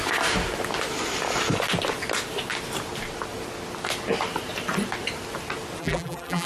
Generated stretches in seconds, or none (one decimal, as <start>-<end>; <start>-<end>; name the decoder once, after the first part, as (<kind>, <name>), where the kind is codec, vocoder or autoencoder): 5.8-6.5 (vocoder, BigVGAN v2)